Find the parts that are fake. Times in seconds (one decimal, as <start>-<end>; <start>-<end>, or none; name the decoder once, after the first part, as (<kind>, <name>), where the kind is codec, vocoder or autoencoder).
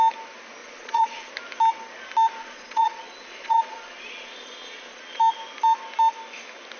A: 0.6-1.3 (vocoder, Vocos); 2.4-5.2